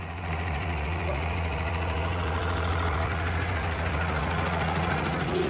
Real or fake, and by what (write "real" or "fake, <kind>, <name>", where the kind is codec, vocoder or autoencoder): fake, vocoder, Vocos